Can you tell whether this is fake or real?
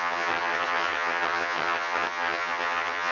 fake